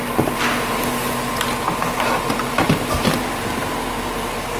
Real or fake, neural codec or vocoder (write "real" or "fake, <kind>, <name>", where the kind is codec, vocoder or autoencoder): real